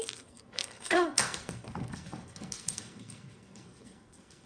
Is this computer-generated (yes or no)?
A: yes